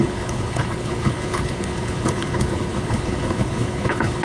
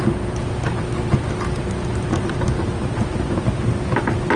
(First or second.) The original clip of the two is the second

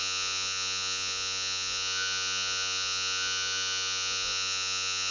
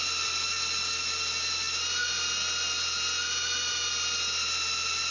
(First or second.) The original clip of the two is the second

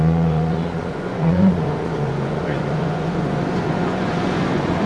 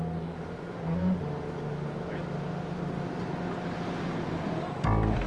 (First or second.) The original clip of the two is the second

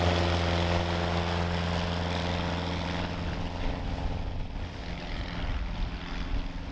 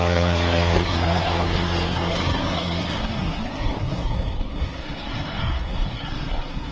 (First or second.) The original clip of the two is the first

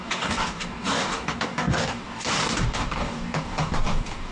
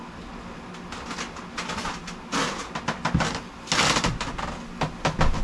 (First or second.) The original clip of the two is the second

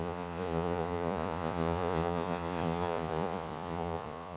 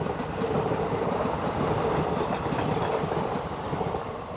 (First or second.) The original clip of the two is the second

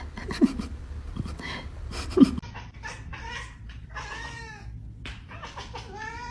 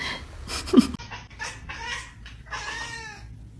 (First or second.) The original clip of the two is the second